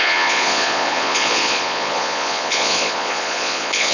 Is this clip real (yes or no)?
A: no